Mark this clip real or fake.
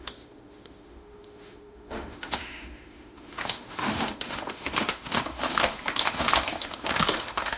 fake